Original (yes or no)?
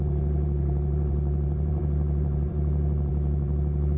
no